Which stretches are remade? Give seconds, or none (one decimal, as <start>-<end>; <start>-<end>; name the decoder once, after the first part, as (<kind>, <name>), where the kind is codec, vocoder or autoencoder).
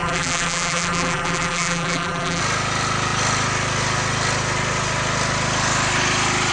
0.0-2.4 (vocoder, BigVGAN v2)